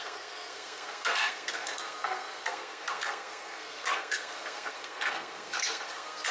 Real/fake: fake